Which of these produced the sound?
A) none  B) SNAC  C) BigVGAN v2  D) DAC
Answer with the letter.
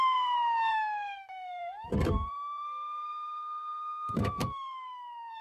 B